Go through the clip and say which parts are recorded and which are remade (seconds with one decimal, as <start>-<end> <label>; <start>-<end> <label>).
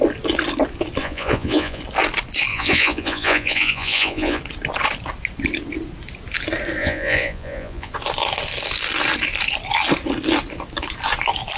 0.0-1.0 recorded; 1.0-1.8 remade; 1.8-2.5 recorded; 2.5-4.4 remade; 4.4-6.8 recorded; 6.8-7.9 remade; 7.9-11.6 recorded